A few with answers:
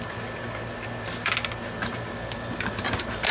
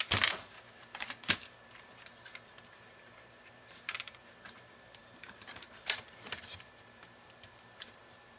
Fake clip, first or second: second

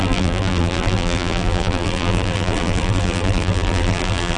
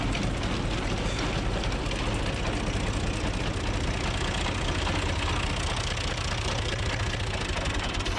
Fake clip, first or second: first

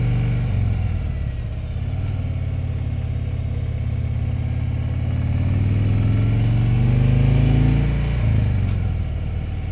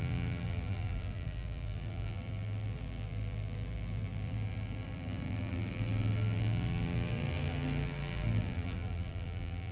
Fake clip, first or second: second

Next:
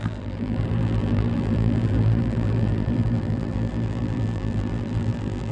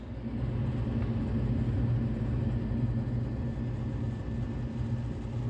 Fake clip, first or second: first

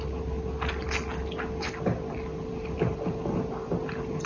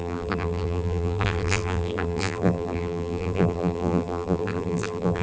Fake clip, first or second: second